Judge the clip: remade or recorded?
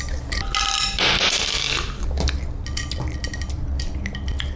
recorded